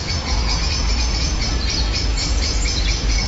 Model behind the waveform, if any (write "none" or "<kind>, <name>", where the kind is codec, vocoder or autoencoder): vocoder, Vocos